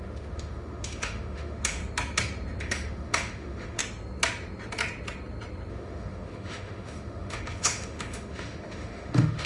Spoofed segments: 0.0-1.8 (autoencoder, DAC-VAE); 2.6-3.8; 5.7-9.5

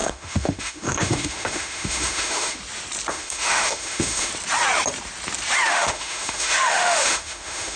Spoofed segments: 0.0-2.6 (autoencoder, DAC-VAE); 3.1-4.3; 5.7-7.8

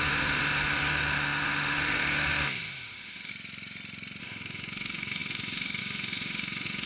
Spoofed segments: 0.0-3.3 (autoencoder, DAC-VAE); 4.2-6.9

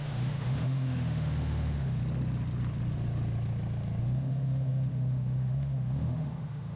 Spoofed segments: 0.0-2.0 (autoencoder, DAC-VAE); 4.0-6.8

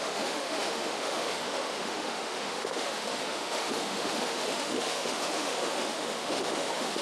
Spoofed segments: 0.0-7.0 (autoencoder, DAC-VAE)